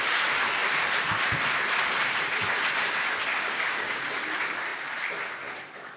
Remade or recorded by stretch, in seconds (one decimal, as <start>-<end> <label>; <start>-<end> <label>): 0.0-3.3 recorded; 3.3-4.0 remade; 4.0-6.0 recorded